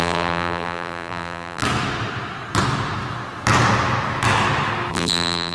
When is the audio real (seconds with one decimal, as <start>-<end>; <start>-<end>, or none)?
1.6-4.9